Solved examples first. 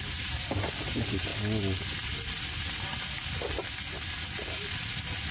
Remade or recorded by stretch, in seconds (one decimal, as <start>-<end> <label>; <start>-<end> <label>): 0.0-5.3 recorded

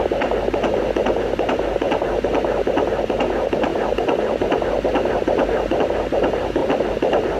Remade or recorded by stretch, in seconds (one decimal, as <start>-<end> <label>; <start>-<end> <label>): 0.0-7.4 recorded

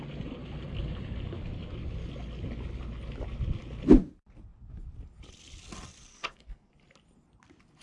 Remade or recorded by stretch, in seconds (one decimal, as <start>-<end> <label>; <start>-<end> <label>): 0.0-6.1 recorded; 6.1-6.7 remade; 6.7-7.8 recorded

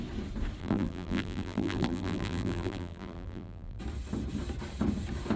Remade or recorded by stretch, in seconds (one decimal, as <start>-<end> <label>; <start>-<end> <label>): 0.0-0.6 recorded; 0.6-3.8 remade; 3.8-5.4 recorded